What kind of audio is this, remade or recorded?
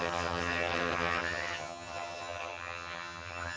remade